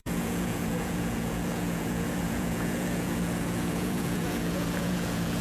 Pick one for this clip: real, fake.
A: fake